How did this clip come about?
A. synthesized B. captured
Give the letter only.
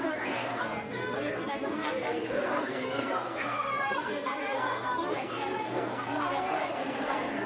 A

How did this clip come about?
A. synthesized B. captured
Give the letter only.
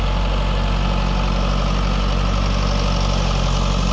B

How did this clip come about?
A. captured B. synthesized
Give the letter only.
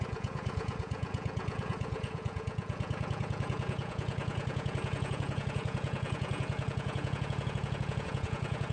B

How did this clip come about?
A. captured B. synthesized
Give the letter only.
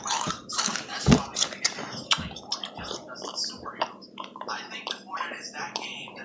B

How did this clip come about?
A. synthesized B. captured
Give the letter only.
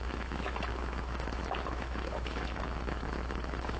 A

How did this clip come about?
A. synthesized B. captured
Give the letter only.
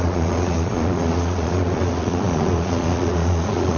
A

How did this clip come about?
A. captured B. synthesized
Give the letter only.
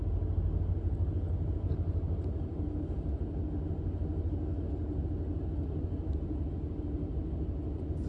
A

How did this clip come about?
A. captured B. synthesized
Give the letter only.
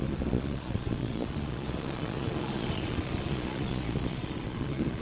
B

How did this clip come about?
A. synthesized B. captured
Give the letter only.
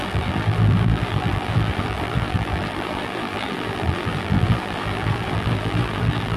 A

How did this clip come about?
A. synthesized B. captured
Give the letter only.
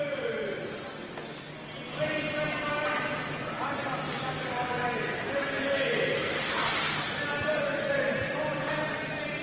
B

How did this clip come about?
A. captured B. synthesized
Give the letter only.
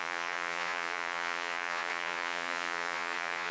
B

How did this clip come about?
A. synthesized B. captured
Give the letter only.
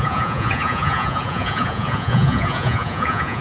A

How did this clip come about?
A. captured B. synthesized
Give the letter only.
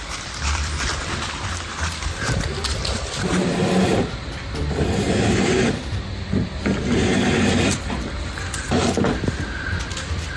B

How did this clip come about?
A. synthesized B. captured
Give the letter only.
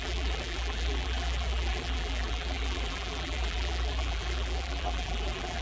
A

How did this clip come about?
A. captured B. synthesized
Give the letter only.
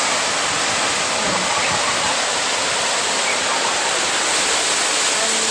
A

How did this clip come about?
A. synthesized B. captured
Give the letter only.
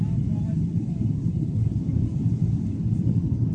B